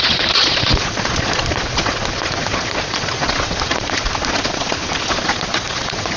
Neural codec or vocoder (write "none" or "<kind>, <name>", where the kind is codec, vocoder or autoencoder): vocoder, Vocos